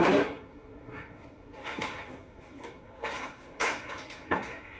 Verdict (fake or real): fake